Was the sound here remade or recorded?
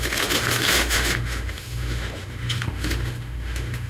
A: remade